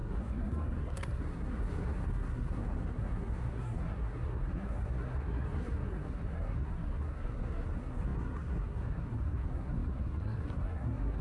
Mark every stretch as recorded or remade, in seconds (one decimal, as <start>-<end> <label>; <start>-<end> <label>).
0.0-11.2 remade